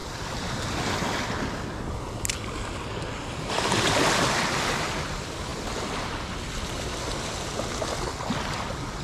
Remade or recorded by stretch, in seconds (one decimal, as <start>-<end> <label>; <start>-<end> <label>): 0.0-0.9 remade; 0.9-9.0 recorded